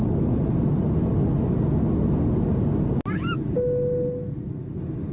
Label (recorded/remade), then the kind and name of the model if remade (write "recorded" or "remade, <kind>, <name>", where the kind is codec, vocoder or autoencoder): recorded